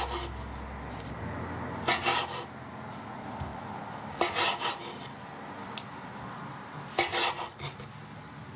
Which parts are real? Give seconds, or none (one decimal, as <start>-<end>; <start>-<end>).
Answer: 0.0-8.6